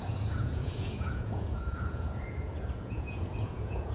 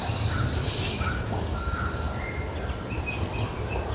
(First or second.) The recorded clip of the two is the second